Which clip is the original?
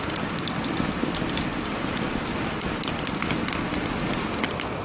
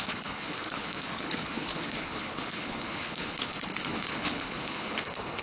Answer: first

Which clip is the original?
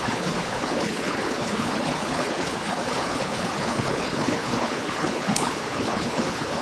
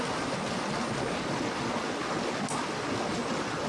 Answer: second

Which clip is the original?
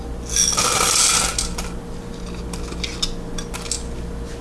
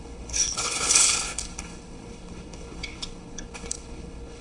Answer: first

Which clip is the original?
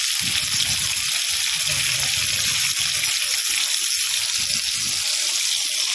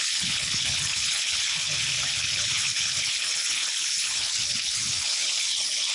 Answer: first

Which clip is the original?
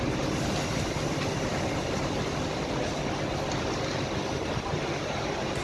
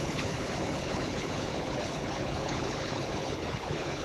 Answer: first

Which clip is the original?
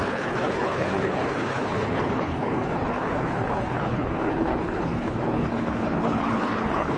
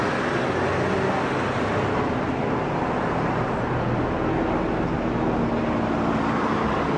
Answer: second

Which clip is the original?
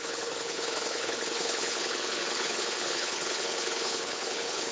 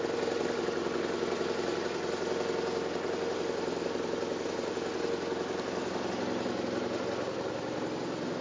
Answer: second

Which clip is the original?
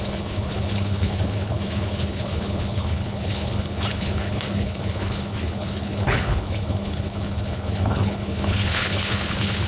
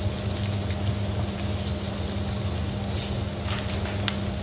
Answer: second